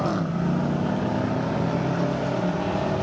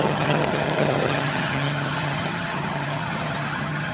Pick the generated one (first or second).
second